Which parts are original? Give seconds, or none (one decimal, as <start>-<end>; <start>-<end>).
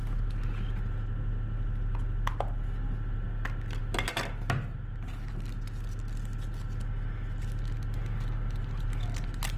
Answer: 0.0-9.6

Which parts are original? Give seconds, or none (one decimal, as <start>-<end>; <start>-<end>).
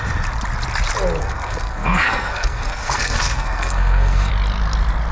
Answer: 0.0-1.2; 4.3-5.1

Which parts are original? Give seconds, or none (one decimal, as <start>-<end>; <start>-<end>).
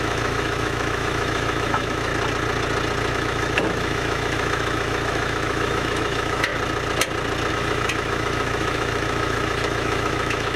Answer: 2.1-3.1; 6.5-7.5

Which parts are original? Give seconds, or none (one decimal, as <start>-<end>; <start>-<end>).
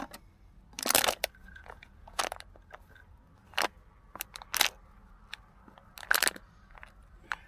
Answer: 0.0-1.4; 2.2-7.5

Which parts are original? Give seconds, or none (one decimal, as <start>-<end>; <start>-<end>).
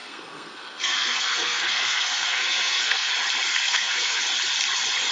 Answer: 3.1-3.5; 4.2-5.1